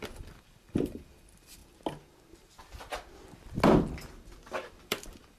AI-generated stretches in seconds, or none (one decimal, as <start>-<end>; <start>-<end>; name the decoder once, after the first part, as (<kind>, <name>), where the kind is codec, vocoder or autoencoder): 0.0-1.6 (vocoder, BigVGAN v2); 4.8-5.4